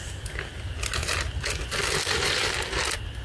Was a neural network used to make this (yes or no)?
no